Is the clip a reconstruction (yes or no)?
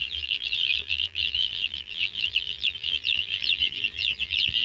yes